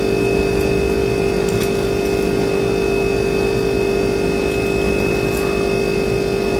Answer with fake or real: real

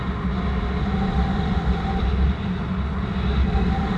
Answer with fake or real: real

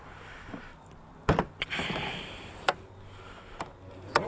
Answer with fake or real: real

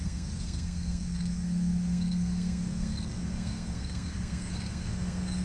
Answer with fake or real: fake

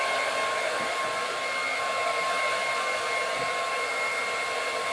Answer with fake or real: real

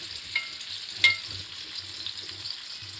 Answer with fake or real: real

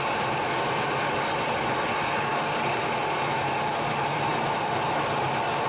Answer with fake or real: real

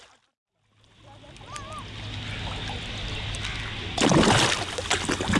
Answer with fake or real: real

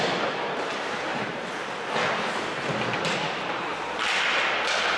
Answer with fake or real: real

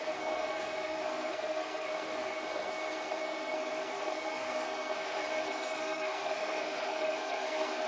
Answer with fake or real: fake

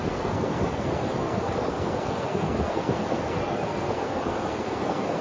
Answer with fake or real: fake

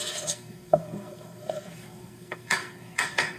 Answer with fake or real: fake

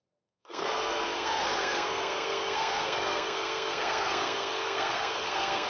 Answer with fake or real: fake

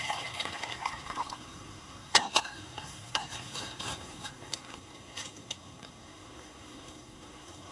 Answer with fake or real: fake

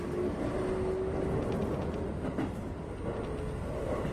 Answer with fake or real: real